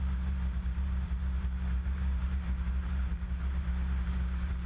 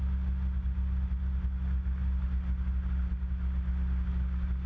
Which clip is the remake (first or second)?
first